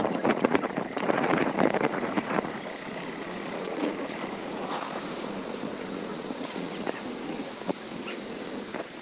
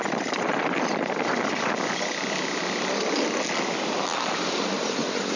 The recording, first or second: second